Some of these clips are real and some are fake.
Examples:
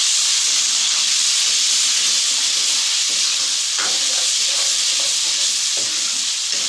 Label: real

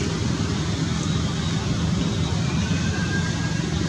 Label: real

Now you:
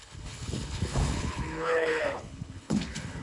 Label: fake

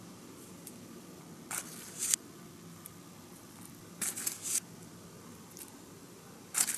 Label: real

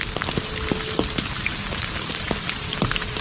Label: real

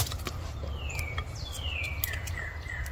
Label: real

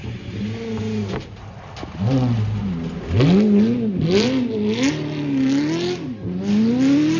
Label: real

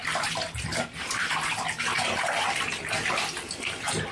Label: real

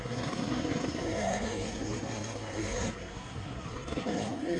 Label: fake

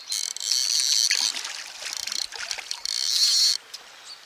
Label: real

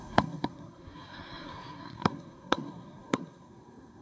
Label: fake